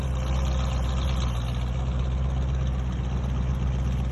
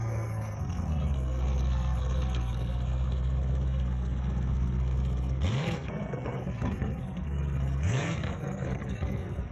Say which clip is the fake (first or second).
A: second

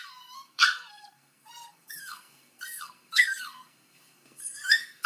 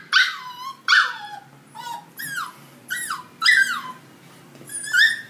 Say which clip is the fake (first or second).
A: first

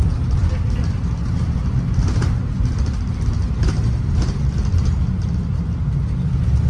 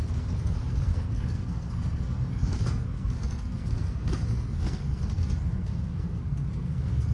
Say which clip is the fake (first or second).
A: second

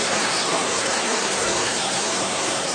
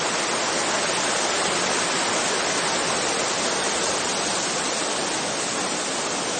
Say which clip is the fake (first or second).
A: first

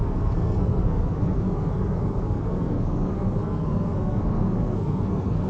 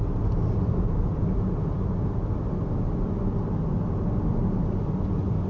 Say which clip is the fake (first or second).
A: first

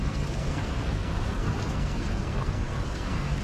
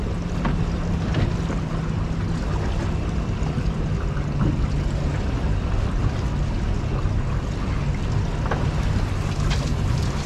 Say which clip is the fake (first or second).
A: first